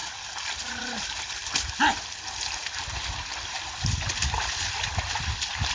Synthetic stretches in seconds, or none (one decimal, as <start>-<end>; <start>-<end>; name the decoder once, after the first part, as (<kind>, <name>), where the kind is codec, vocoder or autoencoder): 0.6-1.4 (vocoder, BigVGAN v2); 4.2-5.7